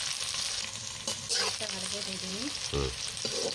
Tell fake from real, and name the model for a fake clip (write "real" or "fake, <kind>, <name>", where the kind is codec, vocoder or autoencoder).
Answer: real